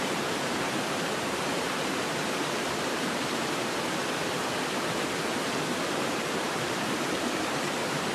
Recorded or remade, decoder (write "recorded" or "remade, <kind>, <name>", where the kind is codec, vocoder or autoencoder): remade, vocoder, BigVGAN v2